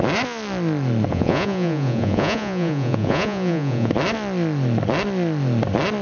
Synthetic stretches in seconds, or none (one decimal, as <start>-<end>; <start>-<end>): 1.1-3.9